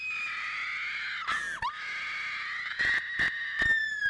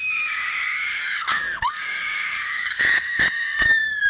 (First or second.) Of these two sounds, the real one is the first